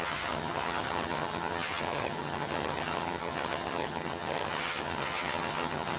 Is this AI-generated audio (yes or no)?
yes